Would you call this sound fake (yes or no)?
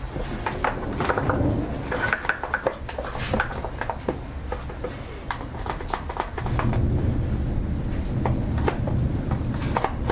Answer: no